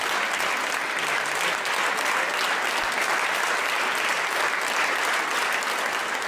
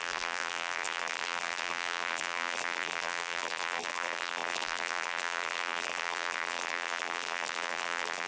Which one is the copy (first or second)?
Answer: second